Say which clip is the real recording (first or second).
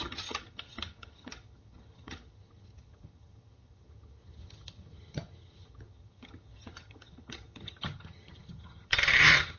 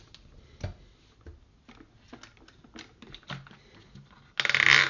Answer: second